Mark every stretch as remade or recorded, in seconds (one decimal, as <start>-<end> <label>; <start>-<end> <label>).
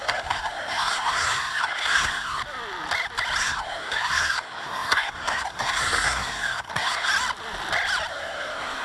0.0-2.4 remade; 2.4-3.4 recorded; 3.4-7.1 remade; 7.1-8.1 recorded; 8.1-8.8 remade